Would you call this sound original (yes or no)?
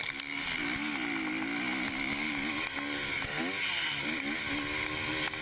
yes